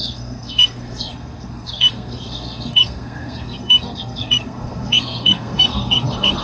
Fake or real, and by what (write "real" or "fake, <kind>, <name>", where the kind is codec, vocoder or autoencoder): fake, codec, SNAC